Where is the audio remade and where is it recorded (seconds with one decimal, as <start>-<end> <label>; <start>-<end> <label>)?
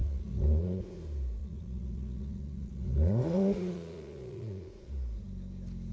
0.0-0.8 remade; 0.8-1.4 recorded; 1.4-4.9 remade; 4.9-5.9 recorded